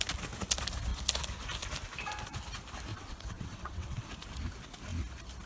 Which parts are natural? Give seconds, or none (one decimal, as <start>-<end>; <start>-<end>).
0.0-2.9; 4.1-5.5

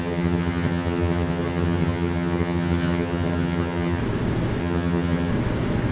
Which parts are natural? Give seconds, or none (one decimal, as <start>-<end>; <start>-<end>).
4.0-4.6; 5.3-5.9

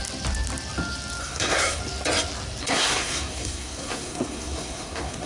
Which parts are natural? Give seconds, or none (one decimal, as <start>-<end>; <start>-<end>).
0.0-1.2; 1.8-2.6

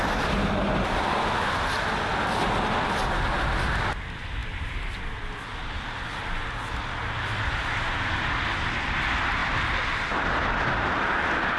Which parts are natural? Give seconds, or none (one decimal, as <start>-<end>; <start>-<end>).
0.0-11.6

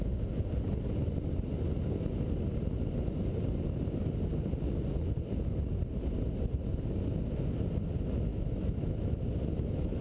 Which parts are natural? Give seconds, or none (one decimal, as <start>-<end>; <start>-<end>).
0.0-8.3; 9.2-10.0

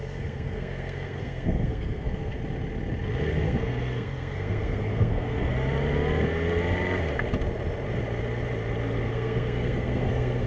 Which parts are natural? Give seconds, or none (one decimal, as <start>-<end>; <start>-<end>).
2.4-3.3; 5.5-9.1

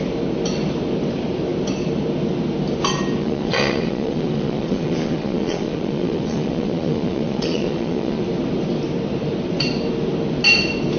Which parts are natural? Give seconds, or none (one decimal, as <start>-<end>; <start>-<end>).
0.0-3.2; 8.2-11.0